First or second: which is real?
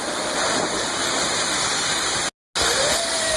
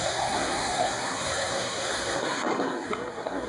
first